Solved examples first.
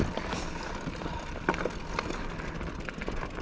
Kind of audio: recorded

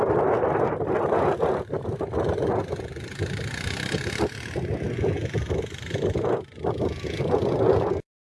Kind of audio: recorded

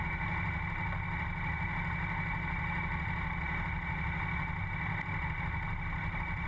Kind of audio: recorded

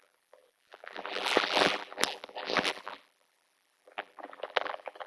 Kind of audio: remade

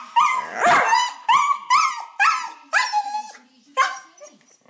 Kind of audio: recorded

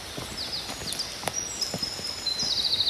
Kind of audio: recorded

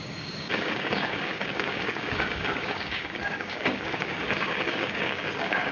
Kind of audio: remade